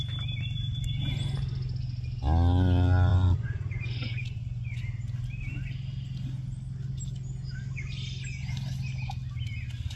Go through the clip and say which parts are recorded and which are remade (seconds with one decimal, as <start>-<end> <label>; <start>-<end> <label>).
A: 0.0-3.1 recorded; 3.1-4.8 remade; 4.8-10.0 recorded